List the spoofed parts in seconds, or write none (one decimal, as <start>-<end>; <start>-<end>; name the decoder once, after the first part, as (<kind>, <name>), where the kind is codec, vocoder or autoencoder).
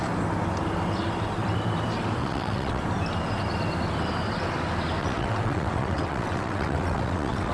2.2-2.8 (vocoder, WaveNeXt); 5.0-7.5